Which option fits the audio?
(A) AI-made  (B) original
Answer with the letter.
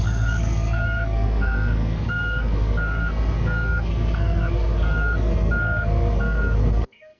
A